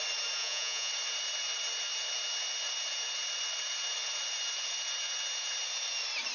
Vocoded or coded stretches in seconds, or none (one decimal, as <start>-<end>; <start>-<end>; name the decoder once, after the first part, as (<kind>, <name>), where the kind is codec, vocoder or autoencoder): 0.4-0.9 (vocoder, Vocos)